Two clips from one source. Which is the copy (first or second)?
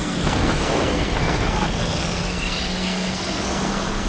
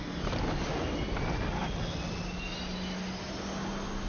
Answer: first